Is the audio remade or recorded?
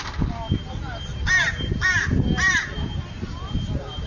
recorded